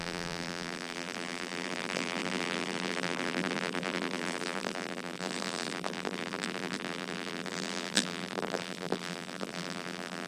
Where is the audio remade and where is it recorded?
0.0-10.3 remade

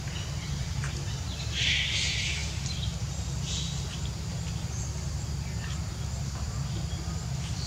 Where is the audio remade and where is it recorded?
0.0-2.4 recorded; 2.4-5.3 remade; 5.3-7.7 recorded

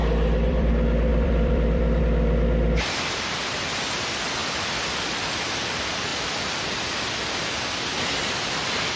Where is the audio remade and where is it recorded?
0.0-0.7 remade; 0.7-1.1 recorded; 1.1-2.0 remade; 2.0-9.0 recorded